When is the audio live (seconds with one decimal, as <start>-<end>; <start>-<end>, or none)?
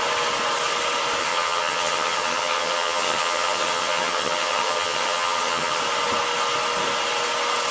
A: 0.0-1.2; 5.8-7.7